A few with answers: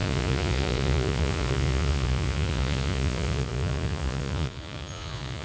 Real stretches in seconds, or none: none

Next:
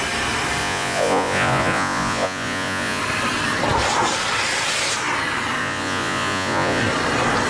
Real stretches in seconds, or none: 0.0-0.6; 3.0-5.6; 6.8-7.5